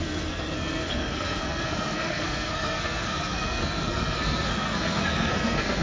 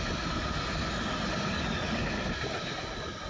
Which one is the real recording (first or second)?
second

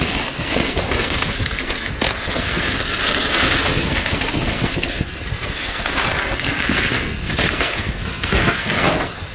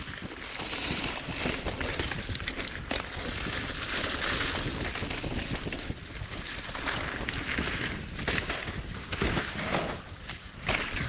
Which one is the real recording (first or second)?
second